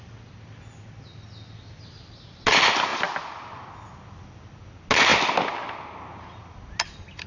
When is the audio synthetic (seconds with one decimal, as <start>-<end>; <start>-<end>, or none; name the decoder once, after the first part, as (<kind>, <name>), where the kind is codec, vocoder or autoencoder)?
none

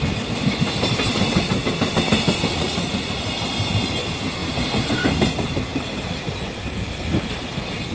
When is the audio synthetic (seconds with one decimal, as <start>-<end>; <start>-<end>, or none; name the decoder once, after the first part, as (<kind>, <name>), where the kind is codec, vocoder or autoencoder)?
2.5-3.3 (vocoder, Vocos)

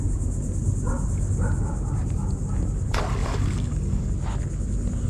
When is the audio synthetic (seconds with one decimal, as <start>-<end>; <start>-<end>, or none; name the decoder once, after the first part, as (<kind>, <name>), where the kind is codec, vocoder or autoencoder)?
3.2-4.1 (codec, DAC)

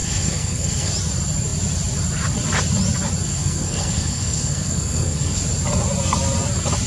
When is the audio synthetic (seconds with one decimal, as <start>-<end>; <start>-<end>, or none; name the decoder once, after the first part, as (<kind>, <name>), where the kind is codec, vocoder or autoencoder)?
0.0-0.9 (codec, SNAC); 3.3-5.4